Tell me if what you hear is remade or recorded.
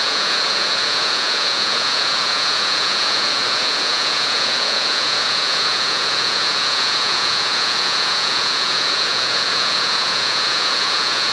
remade